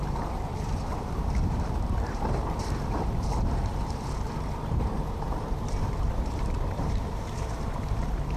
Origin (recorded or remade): remade